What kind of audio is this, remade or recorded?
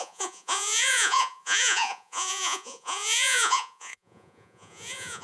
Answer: remade